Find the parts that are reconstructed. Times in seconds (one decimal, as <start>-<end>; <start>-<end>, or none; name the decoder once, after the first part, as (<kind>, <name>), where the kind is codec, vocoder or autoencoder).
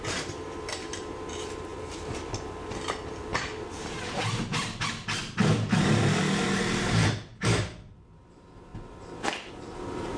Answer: 0.0-8.7 (vocoder, BigVGAN v2); 9.5-10.2